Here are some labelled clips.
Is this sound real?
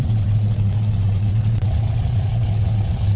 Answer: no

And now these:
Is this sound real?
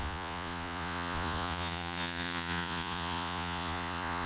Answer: no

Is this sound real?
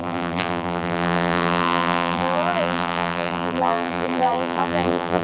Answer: no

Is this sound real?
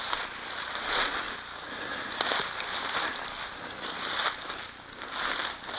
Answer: yes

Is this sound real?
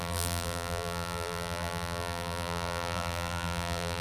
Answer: no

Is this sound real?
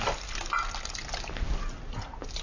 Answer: yes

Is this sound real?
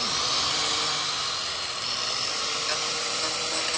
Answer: yes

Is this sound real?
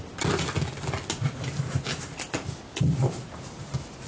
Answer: yes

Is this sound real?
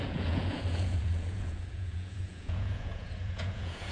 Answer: no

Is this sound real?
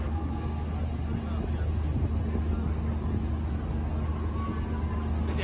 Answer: yes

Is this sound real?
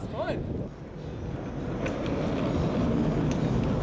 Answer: yes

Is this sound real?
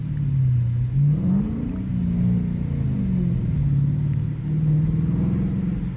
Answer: yes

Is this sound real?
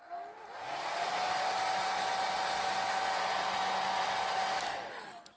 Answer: yes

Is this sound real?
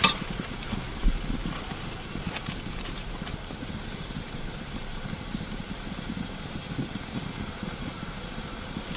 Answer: no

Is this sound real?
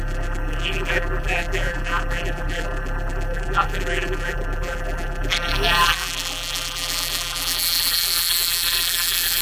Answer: no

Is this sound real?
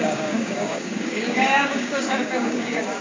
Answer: no